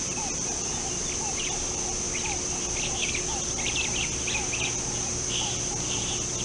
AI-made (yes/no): no